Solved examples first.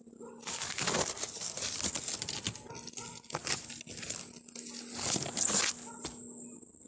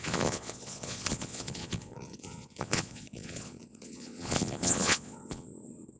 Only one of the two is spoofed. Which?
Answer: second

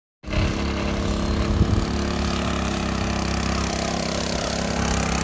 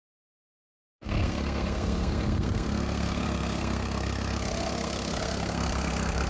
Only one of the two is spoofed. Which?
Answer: second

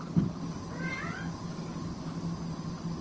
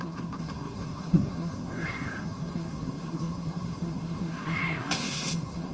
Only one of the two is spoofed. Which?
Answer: second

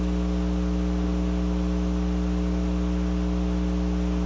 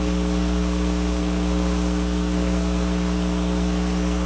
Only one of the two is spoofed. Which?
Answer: second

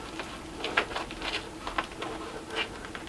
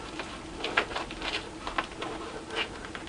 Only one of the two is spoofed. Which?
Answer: second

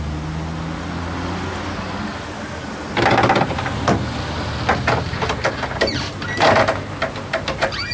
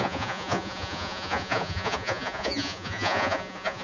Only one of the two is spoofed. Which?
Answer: second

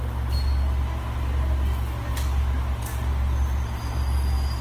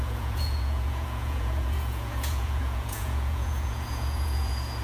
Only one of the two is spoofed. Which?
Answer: second